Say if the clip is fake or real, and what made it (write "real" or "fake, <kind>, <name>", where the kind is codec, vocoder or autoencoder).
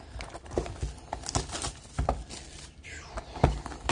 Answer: fake, vocoder, BigVGAN v2